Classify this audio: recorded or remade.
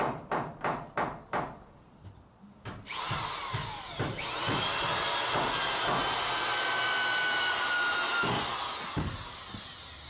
recorded